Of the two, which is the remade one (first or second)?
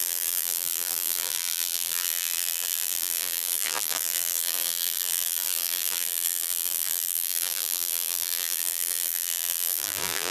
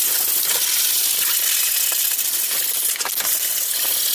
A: first